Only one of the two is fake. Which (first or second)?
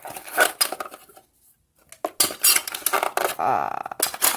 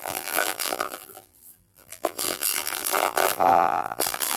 second